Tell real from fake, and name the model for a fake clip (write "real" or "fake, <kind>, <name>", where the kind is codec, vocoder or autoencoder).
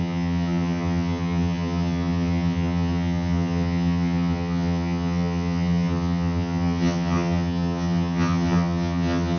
fake, vocoder, HiFi-GAN